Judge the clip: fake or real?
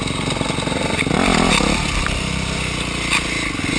real